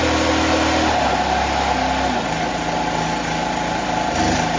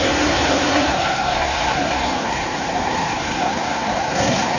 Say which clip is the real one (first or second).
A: first